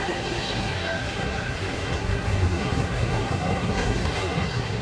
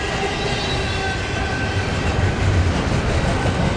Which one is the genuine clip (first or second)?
second